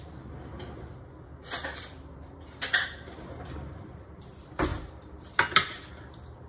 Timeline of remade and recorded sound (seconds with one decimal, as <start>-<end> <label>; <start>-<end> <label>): 0.0-1.7 recorded; 1.7-4.2 remade; 4.2-4.7 recorded; 4.7-6.0 remade; 6.0-6.5 recorded